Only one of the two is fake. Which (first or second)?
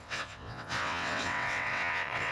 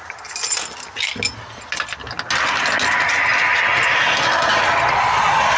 first